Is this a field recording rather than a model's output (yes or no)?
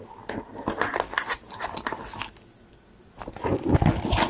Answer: yes